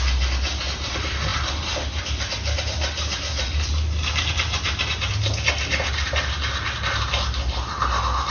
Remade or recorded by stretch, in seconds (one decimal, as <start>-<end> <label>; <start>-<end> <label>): 0.0-8.3 recorded